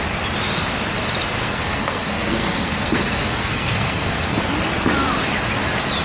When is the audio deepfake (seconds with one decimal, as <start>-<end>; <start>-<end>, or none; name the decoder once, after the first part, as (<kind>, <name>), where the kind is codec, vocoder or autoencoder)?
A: 1.4-4.4 (codec, SNAC)